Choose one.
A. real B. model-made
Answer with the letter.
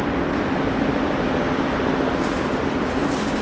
A